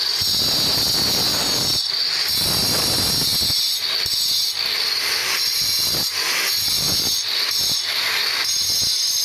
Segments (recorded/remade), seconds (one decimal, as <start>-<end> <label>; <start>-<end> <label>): 0.0-1.3 recorded; 1.3-1.9 remade; 1.9-5.2 recorded; 5.2-8.2 remade; 8.2-9.2 recorded